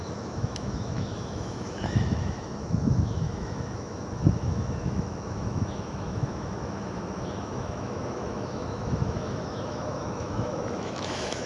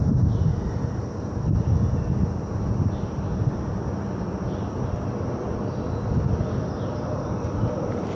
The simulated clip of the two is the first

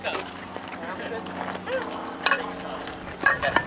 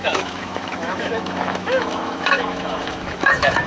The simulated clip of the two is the second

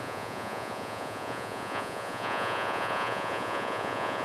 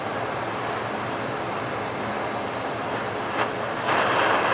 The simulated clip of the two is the first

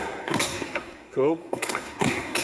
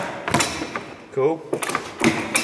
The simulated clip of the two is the first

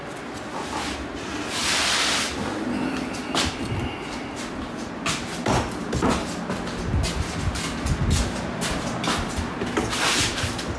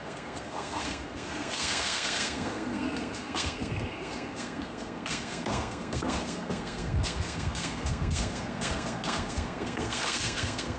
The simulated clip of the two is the second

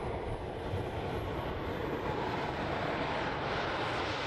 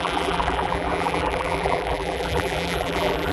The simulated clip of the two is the second